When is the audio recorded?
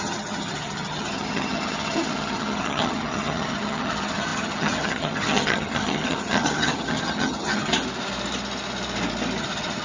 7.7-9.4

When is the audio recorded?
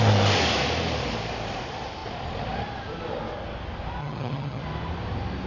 0.0-4.0; 4.6-5.5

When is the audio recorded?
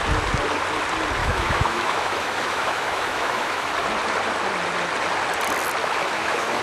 0.0-1.2; 3.7-5.8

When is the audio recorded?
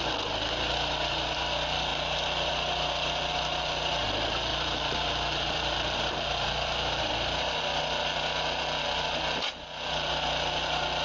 0.0-4.5; 7.6-11.0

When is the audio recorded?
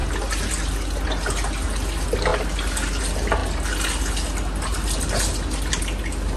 0.0-6.4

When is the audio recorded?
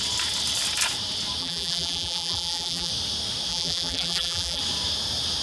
0.0-1.4; 2.9-3.5; 4.6-5.4